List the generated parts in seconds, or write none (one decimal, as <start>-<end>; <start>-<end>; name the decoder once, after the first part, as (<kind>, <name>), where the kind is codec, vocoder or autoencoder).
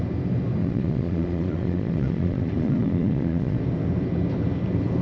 0.6-3.6 (vocoder, Vocos)